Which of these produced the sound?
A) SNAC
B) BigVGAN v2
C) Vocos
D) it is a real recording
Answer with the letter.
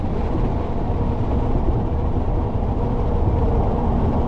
D